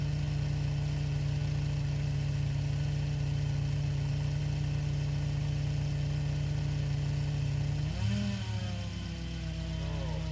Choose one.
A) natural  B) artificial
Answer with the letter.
A